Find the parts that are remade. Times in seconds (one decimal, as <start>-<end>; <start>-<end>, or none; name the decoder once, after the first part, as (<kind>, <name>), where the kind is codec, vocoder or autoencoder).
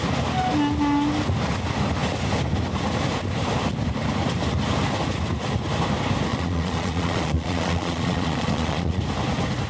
6.3-9.0 (vocoder, Vocos)